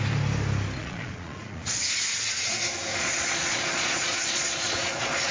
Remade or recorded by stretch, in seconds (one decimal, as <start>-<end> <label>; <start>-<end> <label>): 0.0-0.8 recorded; 0.8-1.8 remade; 1.8-2.9 recorded; 2.9-5.3 remade